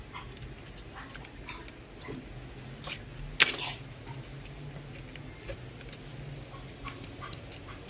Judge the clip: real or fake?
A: real